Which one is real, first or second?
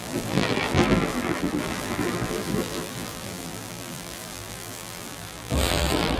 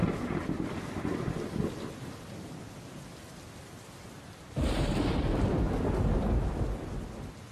second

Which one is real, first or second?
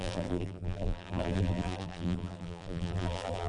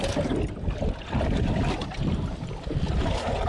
second